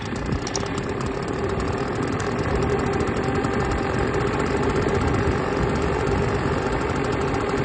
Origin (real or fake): real